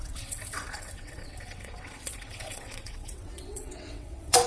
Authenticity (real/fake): fake